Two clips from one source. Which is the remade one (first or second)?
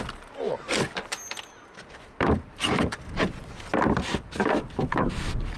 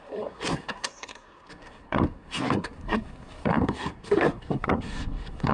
second